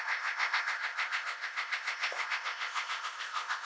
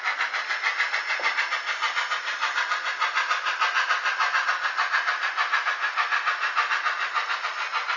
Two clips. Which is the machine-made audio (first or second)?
first